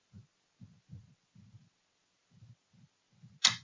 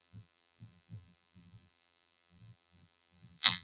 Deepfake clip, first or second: second